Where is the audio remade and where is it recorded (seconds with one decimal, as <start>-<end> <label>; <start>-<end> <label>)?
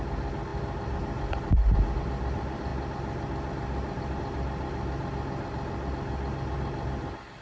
0.0-7.4 recorded